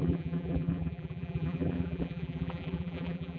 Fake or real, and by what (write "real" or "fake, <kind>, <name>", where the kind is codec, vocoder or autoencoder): fake, vocoder, BigVGAN v2